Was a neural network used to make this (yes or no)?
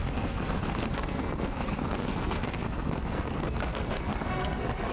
yes